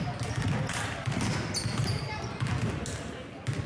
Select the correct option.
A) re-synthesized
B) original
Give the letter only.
B